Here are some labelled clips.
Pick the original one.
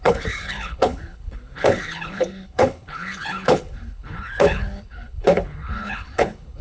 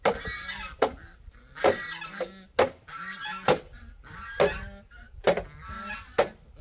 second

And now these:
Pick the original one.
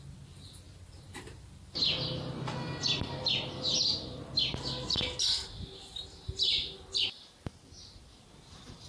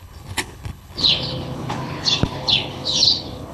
first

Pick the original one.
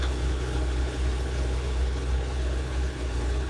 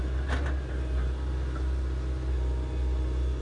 second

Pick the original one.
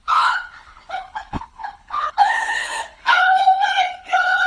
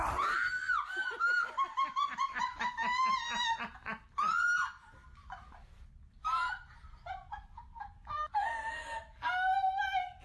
second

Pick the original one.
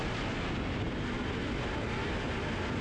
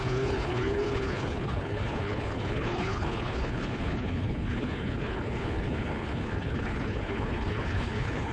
first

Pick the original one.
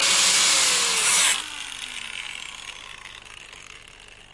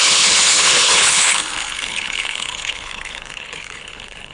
first